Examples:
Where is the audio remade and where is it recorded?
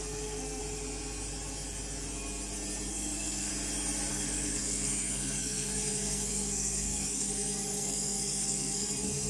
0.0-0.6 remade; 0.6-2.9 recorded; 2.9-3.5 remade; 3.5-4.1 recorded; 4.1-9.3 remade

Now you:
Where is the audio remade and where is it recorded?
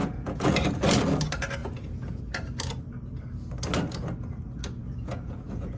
0.0-0.5 remade; 0.5-1.6 recorded; 1.6-2.2 remade; 2.2-4.8 recorded; 4.8-5.8 remade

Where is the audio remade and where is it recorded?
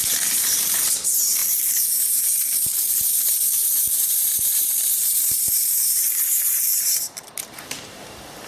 0.0-1.4 remade; 1.4-2.0 recorded; 2.0-8.5 remade